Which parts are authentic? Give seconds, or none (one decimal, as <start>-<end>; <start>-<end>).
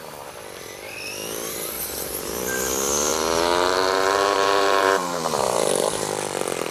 0.0-1.2; 2.3-3.1; 6.1-6.7